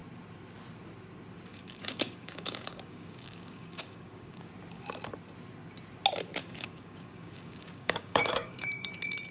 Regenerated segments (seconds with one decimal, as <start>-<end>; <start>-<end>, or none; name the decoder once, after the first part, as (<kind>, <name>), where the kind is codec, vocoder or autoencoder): 1.5-4.5 (codec, DAC); 6.4-8.9

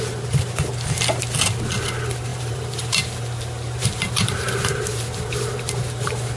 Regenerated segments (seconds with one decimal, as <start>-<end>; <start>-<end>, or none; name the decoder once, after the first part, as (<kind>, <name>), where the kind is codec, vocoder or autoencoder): 2.3-6.4 (vocoder, BigVGAN v2)

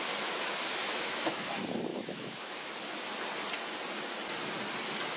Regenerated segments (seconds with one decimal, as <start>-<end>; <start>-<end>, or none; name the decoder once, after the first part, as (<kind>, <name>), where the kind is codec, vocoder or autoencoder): 0.8-1.5 (autoencoder, DAC-VAE); 1.9-2.7

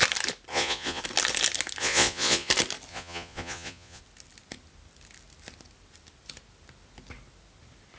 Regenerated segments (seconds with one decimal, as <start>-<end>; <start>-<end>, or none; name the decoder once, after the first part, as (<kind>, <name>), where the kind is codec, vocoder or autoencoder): 0.5-1.0 (vocoder, Vocos); 1.8-2.5; 2.9-4.0